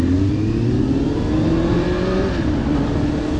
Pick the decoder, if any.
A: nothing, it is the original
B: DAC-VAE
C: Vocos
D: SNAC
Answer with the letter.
A